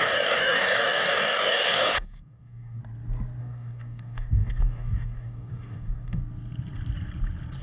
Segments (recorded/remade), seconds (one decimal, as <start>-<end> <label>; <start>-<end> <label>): 0.0-2.8 remade; 2.8-3.4 recorded; 3.4-6.2 remade; 6.2-7.6 recorded